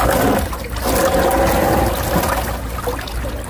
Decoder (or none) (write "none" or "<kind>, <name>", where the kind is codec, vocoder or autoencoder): none